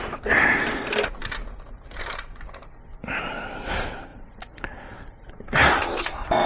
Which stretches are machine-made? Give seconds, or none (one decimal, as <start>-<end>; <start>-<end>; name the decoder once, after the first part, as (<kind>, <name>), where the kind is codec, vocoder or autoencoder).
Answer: 4.1-5.0 (vocoder, BigVGAN v2)